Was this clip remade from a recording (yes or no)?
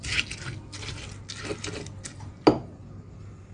no